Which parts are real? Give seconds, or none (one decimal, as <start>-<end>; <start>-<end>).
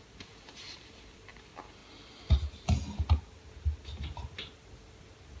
1.8-5.0